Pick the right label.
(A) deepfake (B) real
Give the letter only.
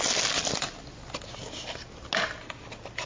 B